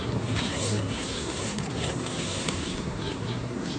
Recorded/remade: remade